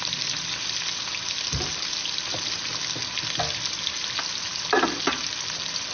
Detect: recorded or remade recorded